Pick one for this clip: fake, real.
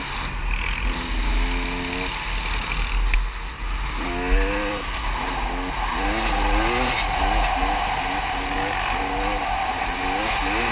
real